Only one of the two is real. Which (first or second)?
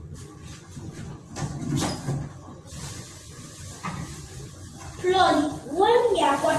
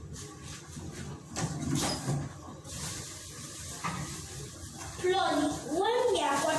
second